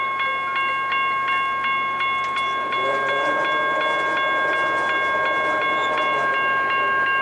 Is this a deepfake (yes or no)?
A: no